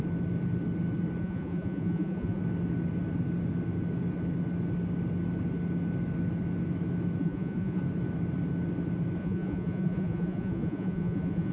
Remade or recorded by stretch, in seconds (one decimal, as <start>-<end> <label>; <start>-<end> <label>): 0.0-1.2 recorded; 1.2-2.4 remade; 2.4-7.2 recorded; 7.2-7.8 remade; 7.8-9.2 recorded; 9.2-11.5 remade